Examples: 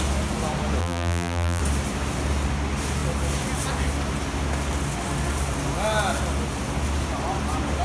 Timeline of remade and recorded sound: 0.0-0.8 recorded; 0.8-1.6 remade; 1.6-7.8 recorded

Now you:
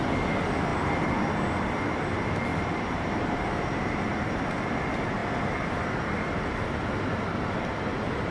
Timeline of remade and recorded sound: 0.0-2.5 recorded; 2.5-4.5 remade; 4.5-8.3 recorded

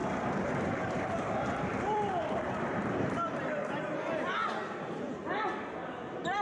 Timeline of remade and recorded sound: 0.0-0.5 recorded; 0.5-6.4 remade

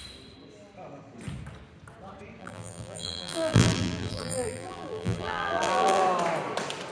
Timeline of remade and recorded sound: 0.0-2.4 recorded; 2.4-6.0 remade; 6.0-6.9 recorded

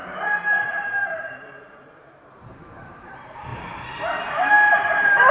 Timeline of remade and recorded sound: 0.0-3.5 remade; 3.5-4.2 recorded; 4.2-5.3 remade

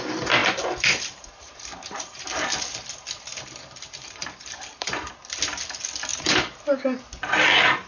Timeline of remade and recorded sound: 0.0-0.4 recorded; 0.4-5.1 remade; 5.1-6.1 recorded; 6.1-6.6 remade; 6.6-7.9 recorded

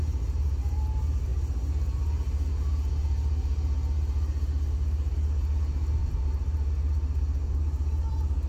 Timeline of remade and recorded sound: 0.0-0.8 remade; 0.8-6.0 recorded; 6.0-6.7 remade; 6.7-8.5 recorded